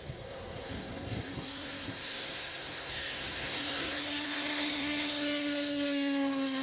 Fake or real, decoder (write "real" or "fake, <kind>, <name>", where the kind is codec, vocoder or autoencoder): fake, codec, SNAC